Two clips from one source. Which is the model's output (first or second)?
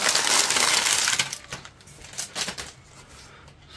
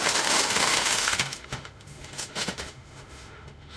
second